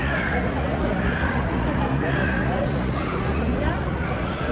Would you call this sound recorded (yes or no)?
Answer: no